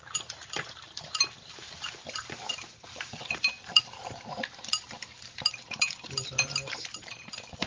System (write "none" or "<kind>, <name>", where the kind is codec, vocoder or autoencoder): vocoder, BigVGAN v2